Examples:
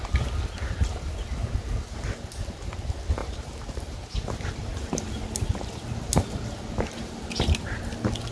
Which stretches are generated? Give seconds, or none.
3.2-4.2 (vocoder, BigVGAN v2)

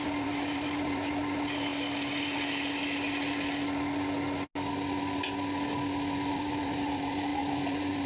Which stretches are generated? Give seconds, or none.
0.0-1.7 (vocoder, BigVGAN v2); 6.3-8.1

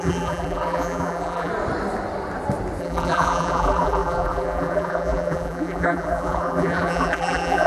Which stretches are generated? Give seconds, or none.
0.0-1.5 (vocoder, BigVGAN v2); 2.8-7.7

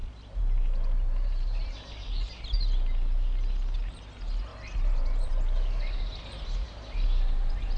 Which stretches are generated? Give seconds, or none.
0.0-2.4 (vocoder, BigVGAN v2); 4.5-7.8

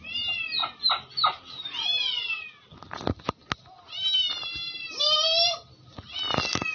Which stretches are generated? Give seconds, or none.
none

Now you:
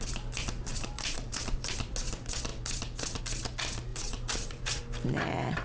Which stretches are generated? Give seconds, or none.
0.7-1.7 (vocoder, BigVGAN v2); 3.9-4.8

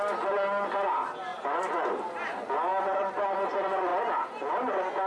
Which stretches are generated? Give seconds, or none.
none